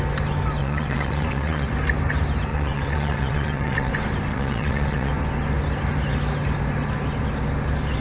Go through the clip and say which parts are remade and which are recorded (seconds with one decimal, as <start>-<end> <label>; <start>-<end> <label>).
0.0-0.6 recorded; 0.6-1.7 remade; 1.7-2.5 recorded; 2.5-3.9 remade; 3.9-4.3 recorded; 4.3-5.1 remade; 5.1-8.0 recorded